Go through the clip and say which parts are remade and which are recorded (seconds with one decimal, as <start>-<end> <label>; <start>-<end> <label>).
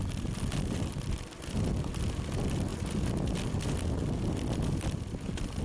0.0-5.6 recorded